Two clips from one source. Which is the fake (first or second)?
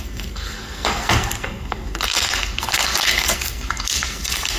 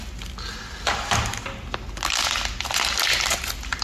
first